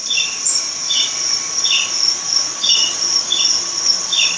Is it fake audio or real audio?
real